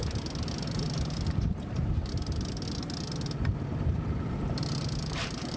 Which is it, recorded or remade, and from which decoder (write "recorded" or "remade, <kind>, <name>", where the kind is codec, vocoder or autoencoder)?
recorded